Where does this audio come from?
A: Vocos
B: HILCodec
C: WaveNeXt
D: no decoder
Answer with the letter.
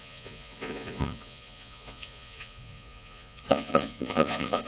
A